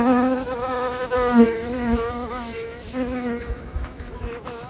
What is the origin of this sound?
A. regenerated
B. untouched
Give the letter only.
A